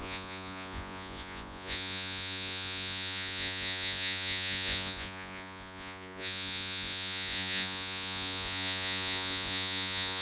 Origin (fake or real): fake